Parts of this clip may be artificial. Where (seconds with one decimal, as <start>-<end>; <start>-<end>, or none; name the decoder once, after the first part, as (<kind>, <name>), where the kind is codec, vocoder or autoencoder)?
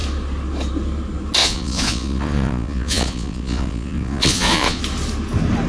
1.4-4.8 (vocoder, Vocos)